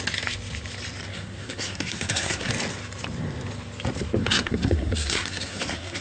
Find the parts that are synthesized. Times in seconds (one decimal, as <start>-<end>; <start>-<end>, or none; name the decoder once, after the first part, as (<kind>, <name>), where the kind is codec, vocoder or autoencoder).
1.1-2.5 (codec, SNAC); 4.2-6.0